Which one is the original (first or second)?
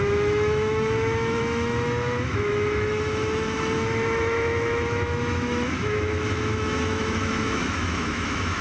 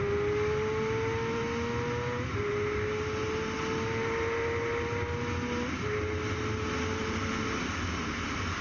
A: second